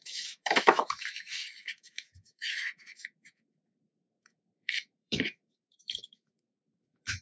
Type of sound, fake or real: fake